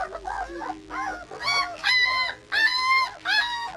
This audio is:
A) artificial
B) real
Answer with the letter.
A